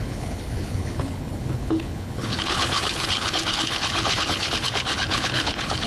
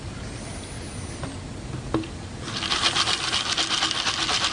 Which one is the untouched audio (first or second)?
second